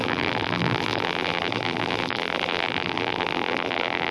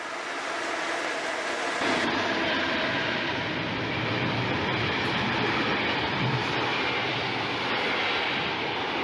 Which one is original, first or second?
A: second